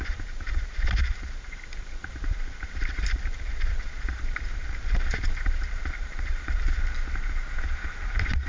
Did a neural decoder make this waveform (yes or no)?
yes